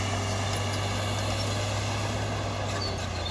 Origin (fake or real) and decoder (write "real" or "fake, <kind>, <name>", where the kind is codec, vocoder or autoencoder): real